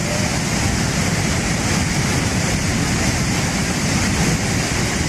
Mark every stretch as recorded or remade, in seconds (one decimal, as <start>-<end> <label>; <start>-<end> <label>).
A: 0.0-5.1 recorded